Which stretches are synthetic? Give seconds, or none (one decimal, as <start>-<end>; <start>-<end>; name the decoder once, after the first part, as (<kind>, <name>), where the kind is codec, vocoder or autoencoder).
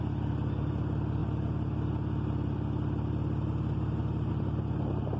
none